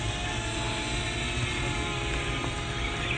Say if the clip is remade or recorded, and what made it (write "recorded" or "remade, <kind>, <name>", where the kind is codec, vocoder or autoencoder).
recorded